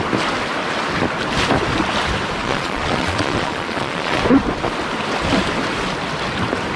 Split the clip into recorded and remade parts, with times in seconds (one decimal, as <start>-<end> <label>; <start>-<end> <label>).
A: 0.0-2.4 recorded; 2.4-4.2 remade; 4.2-6.8 recorded